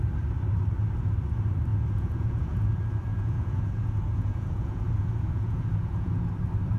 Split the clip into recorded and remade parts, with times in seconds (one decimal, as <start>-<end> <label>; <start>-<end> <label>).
0.0-1.7 recorded; 1.7-2.6 remade; 2.6-3.1 recorded; 3.1-6.3 remade; 6.3-6.8 recorded